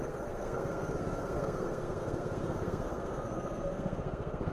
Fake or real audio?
fake